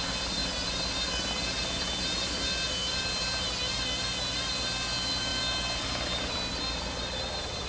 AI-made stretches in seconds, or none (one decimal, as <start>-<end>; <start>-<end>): none